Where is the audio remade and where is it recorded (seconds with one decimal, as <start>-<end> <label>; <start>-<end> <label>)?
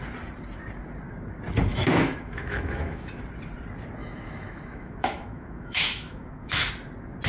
0.0-1.7 recorded; 1.7-3.2 remade; 3.2-4.0 recorded; 4.0-6.7 remade; 6.7-7.3 recorded